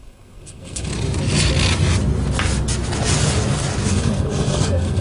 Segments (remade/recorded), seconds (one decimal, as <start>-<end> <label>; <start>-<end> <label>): 0.0-0.9 remade; 0.9-3.9 recorded; 3.9-5.0 remade